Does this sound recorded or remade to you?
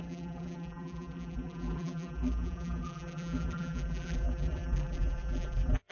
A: remade